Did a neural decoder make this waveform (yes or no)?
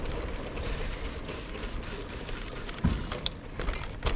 no